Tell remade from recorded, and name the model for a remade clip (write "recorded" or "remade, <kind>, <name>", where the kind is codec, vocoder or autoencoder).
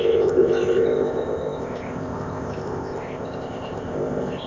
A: remade, codec, ZipCodec